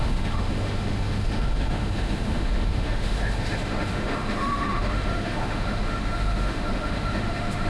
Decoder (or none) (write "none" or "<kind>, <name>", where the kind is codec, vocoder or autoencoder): autoencoder, DAC-VAE